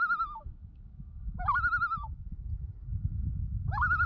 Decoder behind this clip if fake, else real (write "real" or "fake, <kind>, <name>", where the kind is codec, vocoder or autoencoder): real